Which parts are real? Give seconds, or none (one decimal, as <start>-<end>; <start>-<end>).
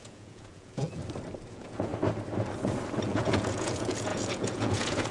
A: 1.0-1.5; 1.9-3.0